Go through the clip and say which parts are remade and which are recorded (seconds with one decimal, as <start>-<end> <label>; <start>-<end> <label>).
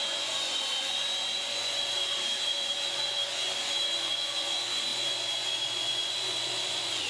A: 0.0-7.1 remade